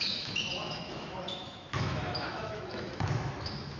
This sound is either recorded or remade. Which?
remade